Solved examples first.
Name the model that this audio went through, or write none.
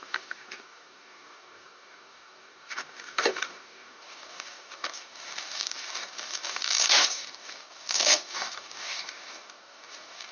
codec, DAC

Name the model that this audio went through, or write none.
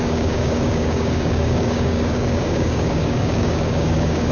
codec, DAC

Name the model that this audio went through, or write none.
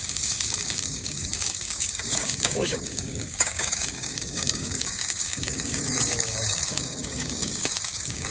codec, DAC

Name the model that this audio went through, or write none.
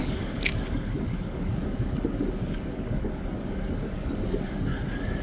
codec, DAC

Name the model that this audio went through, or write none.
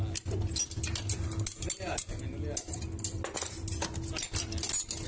none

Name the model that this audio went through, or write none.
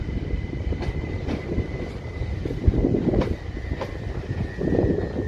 none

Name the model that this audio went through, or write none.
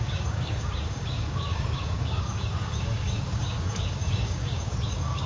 codec, DAC